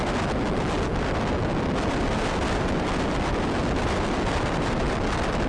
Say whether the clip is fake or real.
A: real